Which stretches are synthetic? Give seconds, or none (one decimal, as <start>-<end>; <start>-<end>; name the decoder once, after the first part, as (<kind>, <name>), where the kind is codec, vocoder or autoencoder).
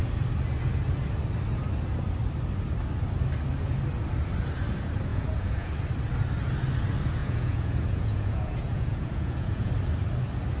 5.1-5.7 (vocoder, Vocos); 7.2-9.7